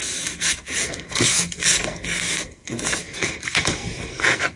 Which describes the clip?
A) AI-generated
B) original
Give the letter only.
A